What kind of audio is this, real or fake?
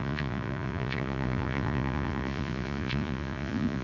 fake